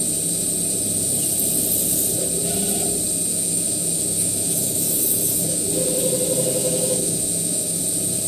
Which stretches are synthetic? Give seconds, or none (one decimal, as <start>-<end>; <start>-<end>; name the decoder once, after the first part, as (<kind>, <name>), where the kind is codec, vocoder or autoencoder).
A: 3.3-5.7 (autoencoder, DAC-VAE); 6.6-7.8

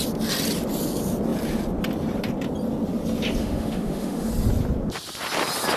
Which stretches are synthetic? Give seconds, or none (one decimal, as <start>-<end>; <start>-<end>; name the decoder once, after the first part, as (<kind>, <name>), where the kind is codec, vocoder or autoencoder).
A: 3.4-4.3 (autoencoder, DAC-VAE)

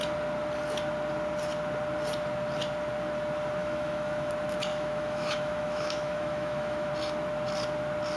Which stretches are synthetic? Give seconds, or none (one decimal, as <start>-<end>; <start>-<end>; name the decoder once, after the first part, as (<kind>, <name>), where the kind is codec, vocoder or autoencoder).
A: 3.6-4.3 (autoencoder, DAC-VAE); 4.7-6.9

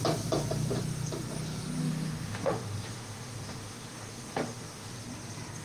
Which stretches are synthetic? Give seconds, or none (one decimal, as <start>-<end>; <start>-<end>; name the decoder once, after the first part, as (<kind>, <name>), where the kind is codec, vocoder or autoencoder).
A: 1.8-4.9 (autoencoder, DAC-VAE)